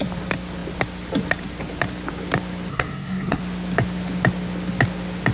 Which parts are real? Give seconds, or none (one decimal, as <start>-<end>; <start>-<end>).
0.0-2.7; 3.4-5.3